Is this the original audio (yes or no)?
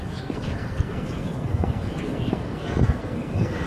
no